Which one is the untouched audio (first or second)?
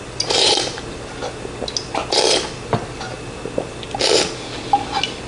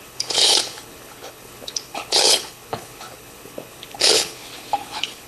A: first